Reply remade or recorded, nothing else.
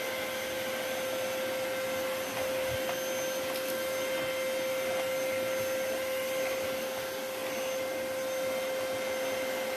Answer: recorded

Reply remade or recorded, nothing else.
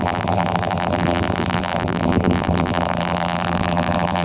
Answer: remade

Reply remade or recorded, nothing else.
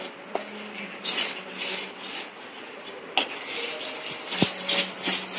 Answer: recorded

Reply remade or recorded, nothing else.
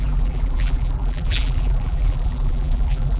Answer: remade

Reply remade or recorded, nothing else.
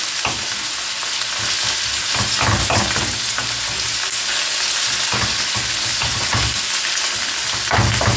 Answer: recorded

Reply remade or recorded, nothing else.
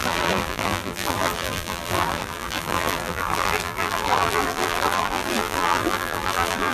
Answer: remade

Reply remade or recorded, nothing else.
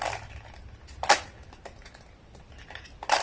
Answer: recorded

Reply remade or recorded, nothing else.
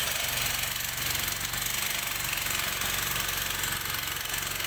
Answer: recorded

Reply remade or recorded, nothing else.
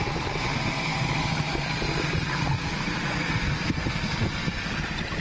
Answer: remade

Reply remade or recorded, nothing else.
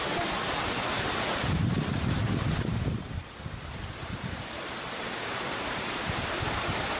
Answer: remade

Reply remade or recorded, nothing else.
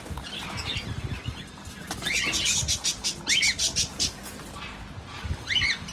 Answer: recorded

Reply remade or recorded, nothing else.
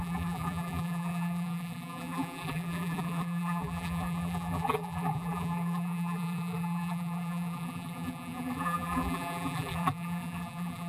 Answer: remade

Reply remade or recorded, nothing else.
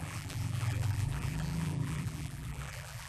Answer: remade